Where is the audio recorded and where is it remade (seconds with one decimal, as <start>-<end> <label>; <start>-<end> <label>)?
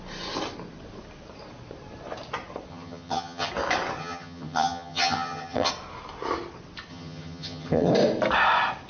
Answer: 0.0-2.7 recorded; 2.7-3.5 remade; 3.5-4.0 recorded; 4.0-5.7 remade; 5.7-6.9 recorded; 6.9-7.9 remade; 7.9-8.9 recorded